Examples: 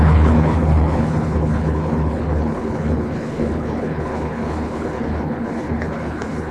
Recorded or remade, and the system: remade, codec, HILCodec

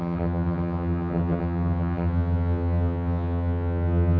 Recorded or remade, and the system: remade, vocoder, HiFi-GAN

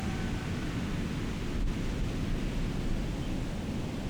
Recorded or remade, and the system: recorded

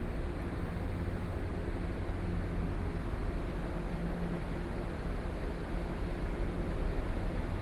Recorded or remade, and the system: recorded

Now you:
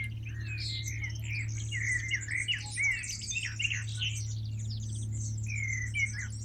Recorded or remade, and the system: recorded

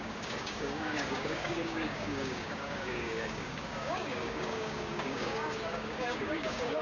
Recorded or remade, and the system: remade, codec, DAC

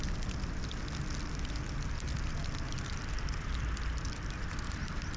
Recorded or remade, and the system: remade, vocoder, BigVGAN v2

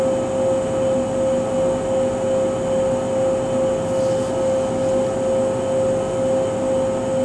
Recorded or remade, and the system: recorded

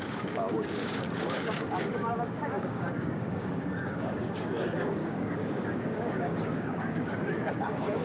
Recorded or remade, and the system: remade, codec, DAC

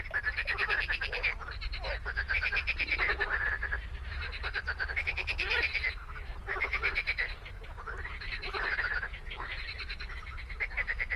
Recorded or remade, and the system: remade, vocoder, BigVGAN v2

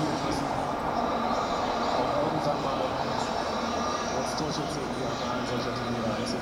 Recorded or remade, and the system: recorded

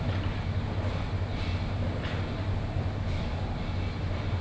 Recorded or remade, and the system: recorded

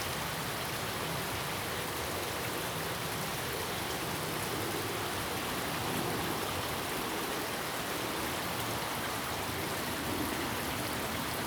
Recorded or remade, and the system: recorded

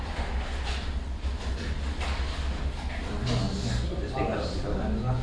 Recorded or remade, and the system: recorded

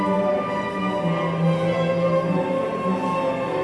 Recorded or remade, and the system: recorded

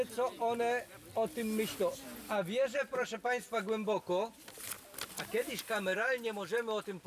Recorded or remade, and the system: recorded